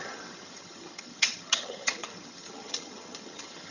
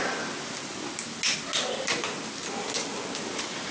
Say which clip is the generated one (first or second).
first